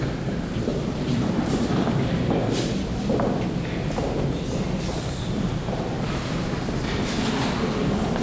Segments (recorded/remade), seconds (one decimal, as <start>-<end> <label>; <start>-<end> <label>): 0.0-0.7 recorded; 0.7-1.9 remade; 1.9-3.6 recorded; 3.6-6.2 remade; 6.2-8.2 recorded

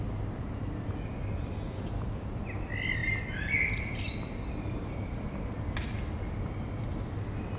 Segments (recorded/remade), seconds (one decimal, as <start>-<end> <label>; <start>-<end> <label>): 0.0-7.6 recorded

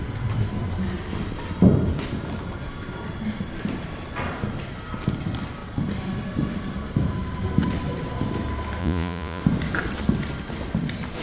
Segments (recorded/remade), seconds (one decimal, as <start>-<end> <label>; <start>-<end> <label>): 0.0-8.8 recorded; 8.8-9.4 remade; 9.4-11.2 recorded

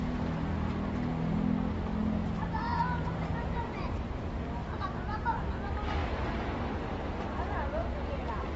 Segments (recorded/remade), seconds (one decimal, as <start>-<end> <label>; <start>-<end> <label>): 0.0-3.7 recorded; 3.7-4.3 remade; 4.3-8.6 recorded

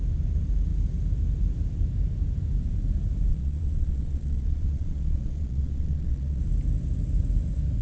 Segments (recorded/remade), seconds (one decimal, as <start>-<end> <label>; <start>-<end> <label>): 0.0-3.3 recorded; 3.3-6.4 remade; 6.4-7.8 recorded

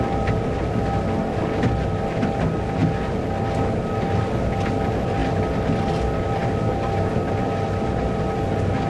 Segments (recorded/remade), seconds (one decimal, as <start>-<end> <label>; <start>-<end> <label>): 0.0-8.9 recorded